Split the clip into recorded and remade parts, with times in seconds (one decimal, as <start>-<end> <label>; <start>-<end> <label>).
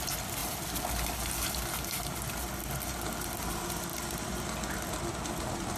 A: 0.0-5.8 recorded